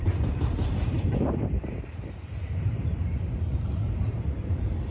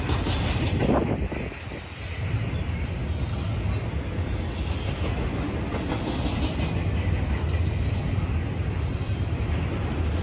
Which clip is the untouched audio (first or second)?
second